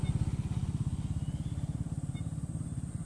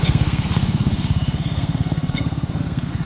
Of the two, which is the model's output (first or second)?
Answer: second